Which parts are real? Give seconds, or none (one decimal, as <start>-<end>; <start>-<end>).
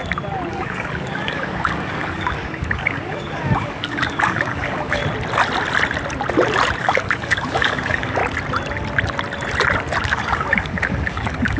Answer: 0.0-0.5; 5.0-6.8; 8.2-10.0